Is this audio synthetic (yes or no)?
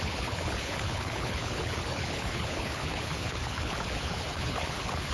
yes